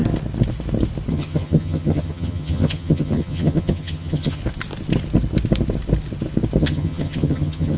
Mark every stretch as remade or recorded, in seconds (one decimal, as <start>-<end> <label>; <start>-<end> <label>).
0.0-1.1 recorded; 1.1-4.4 remade; 4.4-6.6 recorded; 6.6-7.8 remade